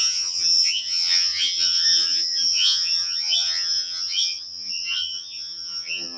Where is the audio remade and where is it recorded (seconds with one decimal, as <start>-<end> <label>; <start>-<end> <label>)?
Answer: 0.0-6.2 remade